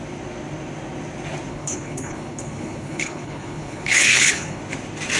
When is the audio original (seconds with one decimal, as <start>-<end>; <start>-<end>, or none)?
0.0-1.5; 4.6-5.2